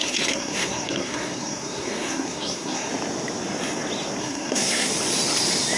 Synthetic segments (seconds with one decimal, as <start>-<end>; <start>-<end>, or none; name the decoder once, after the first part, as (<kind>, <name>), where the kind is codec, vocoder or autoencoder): 0.0-2.9 (codec, SNAC); 4.2-4.9